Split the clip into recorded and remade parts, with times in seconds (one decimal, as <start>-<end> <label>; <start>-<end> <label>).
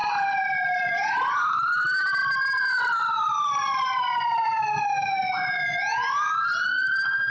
0.0-0.9 remade; 0.9-7.3 recorded